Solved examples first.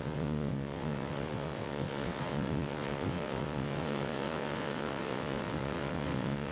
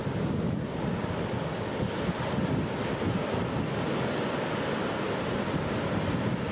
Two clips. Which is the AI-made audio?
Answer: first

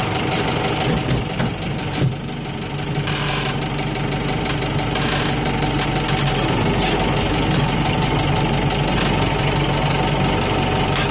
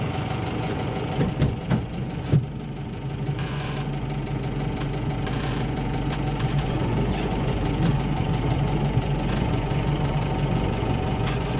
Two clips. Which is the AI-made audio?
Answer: second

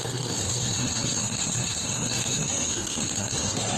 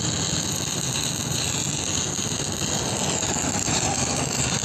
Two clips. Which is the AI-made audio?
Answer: first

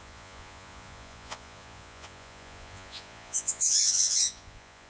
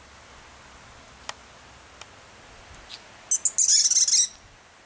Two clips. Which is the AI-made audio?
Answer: first